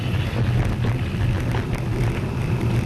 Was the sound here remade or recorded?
recorded